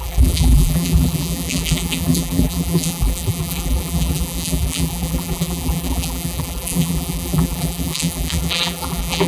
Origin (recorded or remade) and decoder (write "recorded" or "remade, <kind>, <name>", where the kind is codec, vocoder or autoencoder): remade, vocoder, BigVGAN v2